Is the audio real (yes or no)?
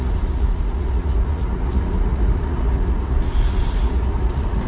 no